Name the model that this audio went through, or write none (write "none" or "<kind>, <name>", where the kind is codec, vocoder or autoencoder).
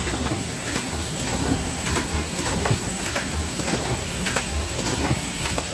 codec, SNAC